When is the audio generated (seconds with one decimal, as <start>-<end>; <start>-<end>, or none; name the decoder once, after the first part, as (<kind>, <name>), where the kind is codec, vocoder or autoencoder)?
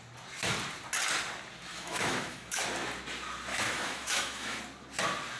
1.7-2.6 (autoencoder, DAC-VAE); 3.5-4.6